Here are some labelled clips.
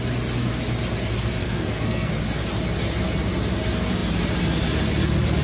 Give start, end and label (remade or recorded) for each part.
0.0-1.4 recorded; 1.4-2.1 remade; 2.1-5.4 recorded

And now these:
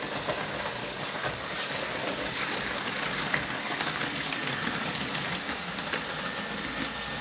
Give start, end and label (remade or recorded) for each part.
0.0-0.8 recorded; 0.8-5.1 remade; 5.1-7.2 recorded

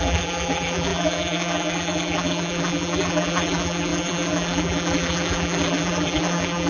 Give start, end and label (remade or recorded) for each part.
0.0-6.7 remade

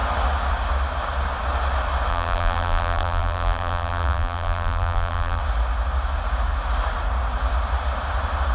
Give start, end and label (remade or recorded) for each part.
0.0-2.1 recorded; 2.1-5.4 remade; 5.4-8.5 recorded

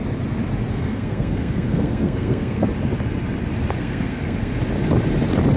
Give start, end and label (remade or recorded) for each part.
0.0-0.7 recorded; 0.7-2.7 remade; 2.7-3.8 recorded; 3.8-4.5 remade; 4.5-5.6 recorded

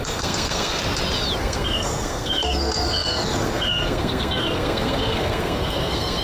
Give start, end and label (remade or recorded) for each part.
0.0-0.8 remade; 0.8-1.4 recorded; 1.4-6.2 remade

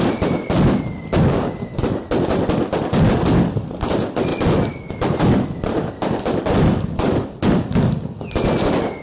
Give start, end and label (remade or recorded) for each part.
0.0-9.0 recorded

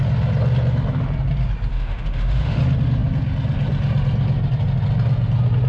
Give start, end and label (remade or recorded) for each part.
0.0-1.7 recorded; 1.7-2.6 remade; 2.6-5.7 recorded